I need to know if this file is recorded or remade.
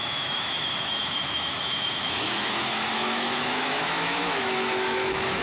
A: remade